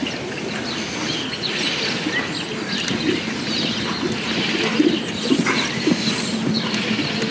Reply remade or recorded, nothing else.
recorded